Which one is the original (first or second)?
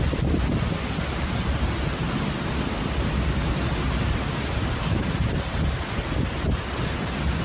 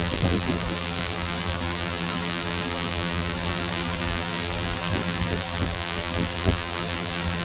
first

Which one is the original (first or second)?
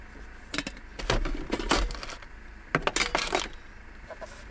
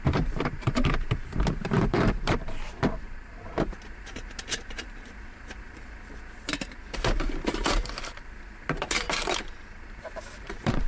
first